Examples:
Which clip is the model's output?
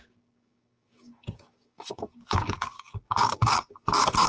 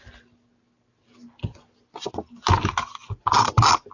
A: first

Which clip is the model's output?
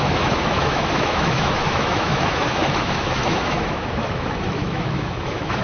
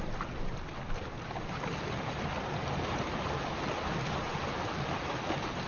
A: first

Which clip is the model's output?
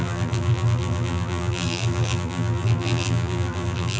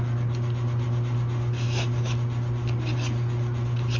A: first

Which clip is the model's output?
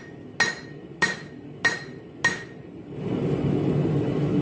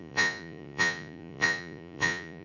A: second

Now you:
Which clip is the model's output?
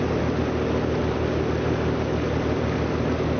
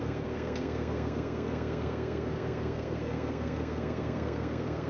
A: second